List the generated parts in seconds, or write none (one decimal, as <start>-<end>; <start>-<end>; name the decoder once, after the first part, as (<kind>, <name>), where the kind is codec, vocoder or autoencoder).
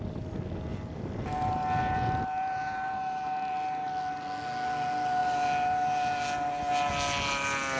none